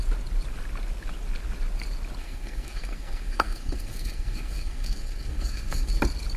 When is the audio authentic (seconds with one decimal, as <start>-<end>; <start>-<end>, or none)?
0.0-2.2; 6.0-6.4